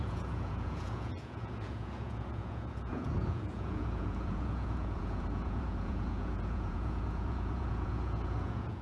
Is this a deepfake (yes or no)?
yes